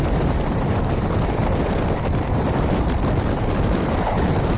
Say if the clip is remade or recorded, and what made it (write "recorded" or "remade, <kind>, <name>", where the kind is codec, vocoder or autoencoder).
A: remade, vocoder, BigVGAN v2